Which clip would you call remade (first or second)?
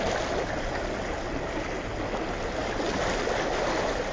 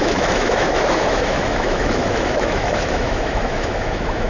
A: second